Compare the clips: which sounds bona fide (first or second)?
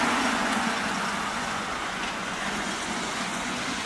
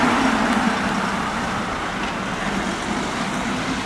second